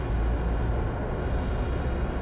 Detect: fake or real real